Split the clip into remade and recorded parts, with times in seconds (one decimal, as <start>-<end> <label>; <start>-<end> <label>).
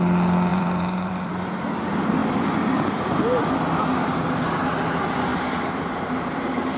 0.0-0.5 recorded; 0.5-1.3 remade; 1.3-5.3 recorded; 5.3-6.8 remade